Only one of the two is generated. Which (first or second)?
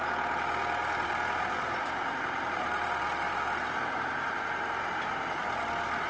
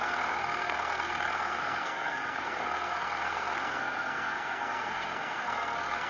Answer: second